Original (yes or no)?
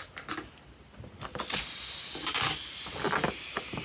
yes